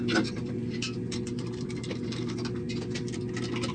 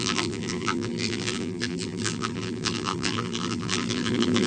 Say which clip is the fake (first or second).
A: second